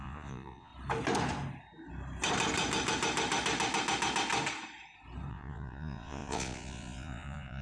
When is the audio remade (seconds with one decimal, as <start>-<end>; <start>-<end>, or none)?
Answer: 0.0-0.7; 5.3-7.6